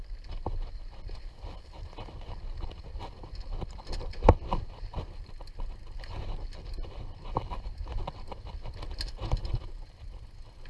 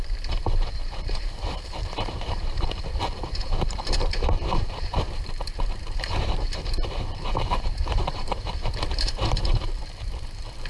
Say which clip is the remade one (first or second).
second